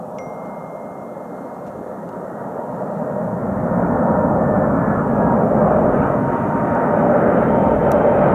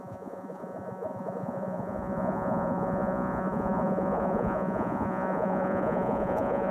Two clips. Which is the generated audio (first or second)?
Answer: second